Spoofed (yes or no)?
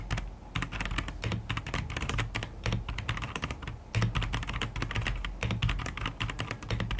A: no